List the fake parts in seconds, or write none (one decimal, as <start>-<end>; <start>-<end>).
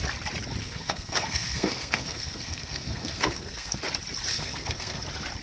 0.6-3.8; 4.3-5.0